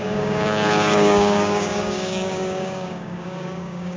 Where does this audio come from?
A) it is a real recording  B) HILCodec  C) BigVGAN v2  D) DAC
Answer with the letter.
D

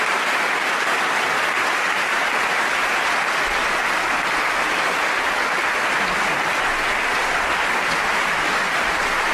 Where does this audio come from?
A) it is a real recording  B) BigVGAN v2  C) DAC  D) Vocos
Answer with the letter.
A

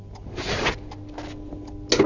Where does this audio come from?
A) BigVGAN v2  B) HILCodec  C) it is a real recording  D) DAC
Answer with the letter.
C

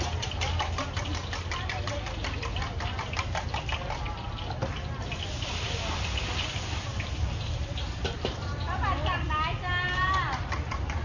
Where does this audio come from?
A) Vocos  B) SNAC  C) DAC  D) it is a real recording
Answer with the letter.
D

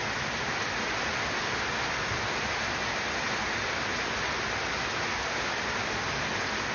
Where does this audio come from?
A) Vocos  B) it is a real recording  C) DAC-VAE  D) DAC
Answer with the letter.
B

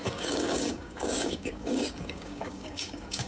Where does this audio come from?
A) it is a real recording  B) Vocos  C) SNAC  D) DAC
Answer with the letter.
D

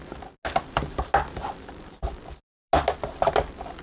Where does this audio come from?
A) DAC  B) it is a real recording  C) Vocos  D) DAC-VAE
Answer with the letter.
B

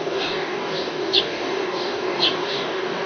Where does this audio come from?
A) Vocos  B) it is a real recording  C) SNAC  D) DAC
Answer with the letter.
D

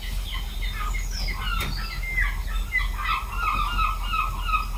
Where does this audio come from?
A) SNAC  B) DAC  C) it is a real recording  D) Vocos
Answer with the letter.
C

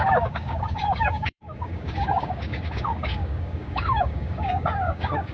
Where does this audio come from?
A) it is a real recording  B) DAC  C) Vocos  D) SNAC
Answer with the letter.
B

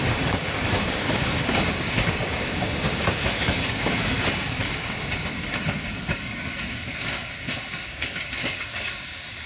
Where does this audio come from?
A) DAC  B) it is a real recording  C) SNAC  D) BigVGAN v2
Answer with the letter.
A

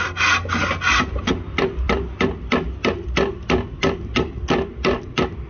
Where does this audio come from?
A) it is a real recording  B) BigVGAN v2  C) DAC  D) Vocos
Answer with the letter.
A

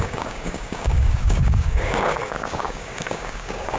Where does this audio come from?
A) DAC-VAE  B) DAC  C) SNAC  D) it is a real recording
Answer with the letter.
B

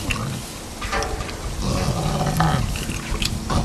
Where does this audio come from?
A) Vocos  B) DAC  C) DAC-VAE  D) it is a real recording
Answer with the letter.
D